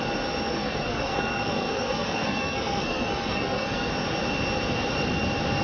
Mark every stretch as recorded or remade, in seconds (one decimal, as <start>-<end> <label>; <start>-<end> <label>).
0.0-0.5 recorded; 0.5-3.9 remade; 3.9-5.6 recorded